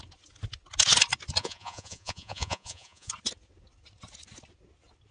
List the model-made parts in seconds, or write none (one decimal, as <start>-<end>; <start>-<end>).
1.4-3.1